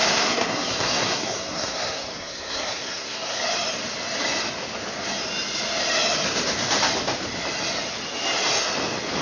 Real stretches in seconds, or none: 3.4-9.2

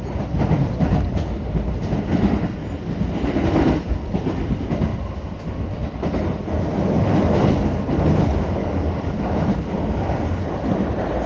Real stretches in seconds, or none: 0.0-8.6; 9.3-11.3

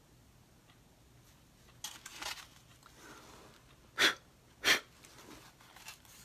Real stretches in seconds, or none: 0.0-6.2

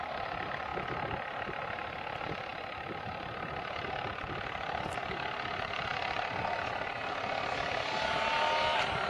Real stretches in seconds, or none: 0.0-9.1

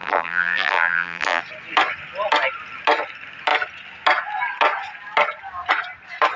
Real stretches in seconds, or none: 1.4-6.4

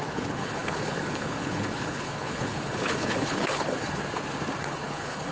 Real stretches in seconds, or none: 4.0-4.6

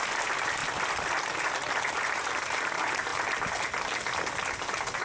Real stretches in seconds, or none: 0.6-1.9; 3.1-4.6